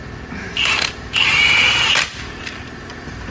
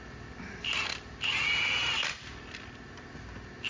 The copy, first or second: first